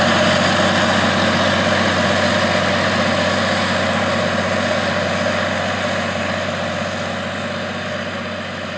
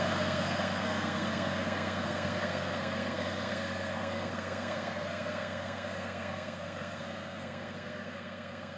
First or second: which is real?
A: first